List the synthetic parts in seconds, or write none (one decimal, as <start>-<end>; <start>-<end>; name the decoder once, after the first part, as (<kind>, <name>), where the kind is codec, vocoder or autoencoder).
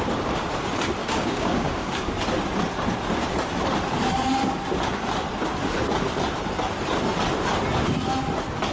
1.0-2.1 (codec, DAC)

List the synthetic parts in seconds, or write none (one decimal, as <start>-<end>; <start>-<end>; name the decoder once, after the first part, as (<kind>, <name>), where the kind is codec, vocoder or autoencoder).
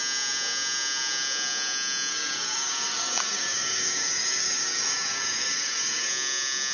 2.1-6.1 (codec, DAC)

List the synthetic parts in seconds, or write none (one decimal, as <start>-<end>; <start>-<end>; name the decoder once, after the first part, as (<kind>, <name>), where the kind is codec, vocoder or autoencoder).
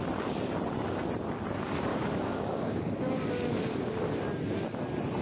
1.9-3.1 (codec, DAC)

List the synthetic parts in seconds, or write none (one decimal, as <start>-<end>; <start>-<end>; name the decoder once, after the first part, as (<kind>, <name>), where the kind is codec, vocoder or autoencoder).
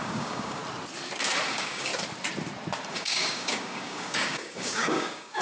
0.0-0.6 (codec, DAC); 1.5-1.9; 2.9-5.4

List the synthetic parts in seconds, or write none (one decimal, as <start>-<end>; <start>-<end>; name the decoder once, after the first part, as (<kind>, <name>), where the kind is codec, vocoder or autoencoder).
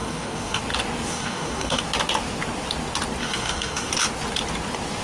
0.0-0.6 (codec, DAC); 1.1-1.8; 3.2-3.9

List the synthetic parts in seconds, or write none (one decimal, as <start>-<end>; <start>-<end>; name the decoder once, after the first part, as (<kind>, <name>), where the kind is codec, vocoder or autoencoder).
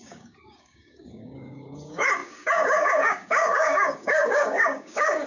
0.0-5.3 (codec, DAC)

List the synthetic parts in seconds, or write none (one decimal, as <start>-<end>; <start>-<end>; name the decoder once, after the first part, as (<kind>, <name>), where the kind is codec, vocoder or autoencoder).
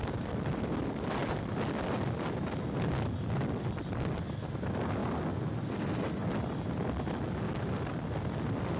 none